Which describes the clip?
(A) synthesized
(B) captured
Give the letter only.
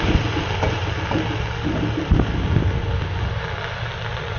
B